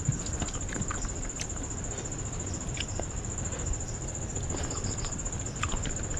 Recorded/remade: recorded